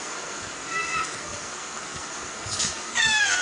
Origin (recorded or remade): remade